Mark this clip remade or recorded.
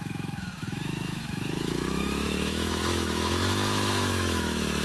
remade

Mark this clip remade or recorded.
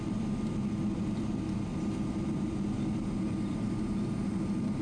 recorded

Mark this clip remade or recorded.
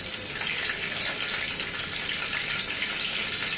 recorded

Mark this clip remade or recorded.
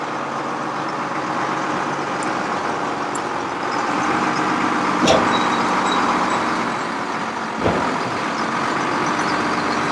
recorded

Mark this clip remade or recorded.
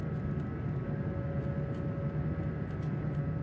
recorded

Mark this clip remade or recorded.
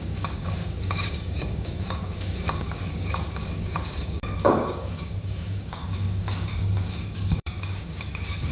remade